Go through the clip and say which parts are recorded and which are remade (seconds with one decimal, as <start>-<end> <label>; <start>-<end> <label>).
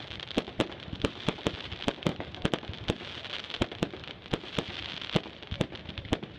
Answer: 0.0-2.1 remade; 2.1-5.9 recorded; 5.9-6.4 remade